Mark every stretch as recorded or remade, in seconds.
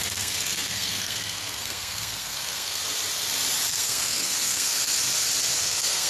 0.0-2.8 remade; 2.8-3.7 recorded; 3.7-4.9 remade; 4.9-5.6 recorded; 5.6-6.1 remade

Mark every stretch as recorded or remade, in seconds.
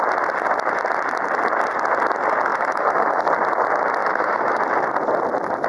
0.0-2.5 recorded; 2.5-3.2 remade; 3.2-4.0 recorded; 4.0-4.6 remade; 4.6-5.7 recorded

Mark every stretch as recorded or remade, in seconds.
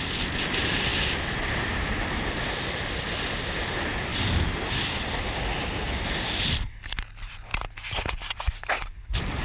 0.0-0.9 remade; 0.9-1.4 recorded; 1.4-4.1 remade; 4.1-6.8 recorded; 6.8-7.5 remade; 7.5-8.8 recorded; 8.8-9.4 remade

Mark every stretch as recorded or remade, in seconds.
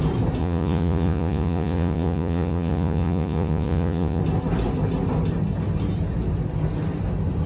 0.0-0.4 recorded; 0.4-4.2 remade; 4.2-7.5 recorded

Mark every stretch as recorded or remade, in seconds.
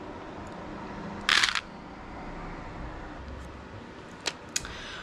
0.0-5.0 recorded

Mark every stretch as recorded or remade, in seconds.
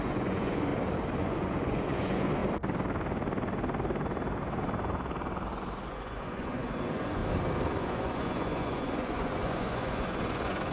0.0-0.7 remade; 0.7-1.2 recorded; 1.2-2.4 remade; 2.4-5.9 recorded; 5.9-7.2 remade; 7.2-7.8 recorded; 7.8-10.7 remade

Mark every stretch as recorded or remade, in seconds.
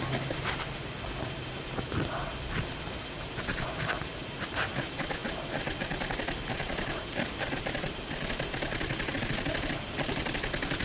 0.0-10.8 recorded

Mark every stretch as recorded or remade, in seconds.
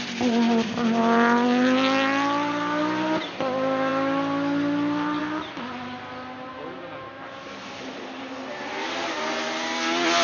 0.0-10.2 recorded